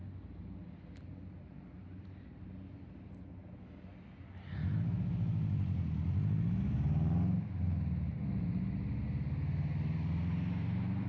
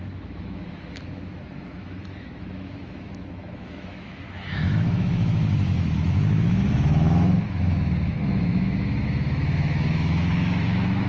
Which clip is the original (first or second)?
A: first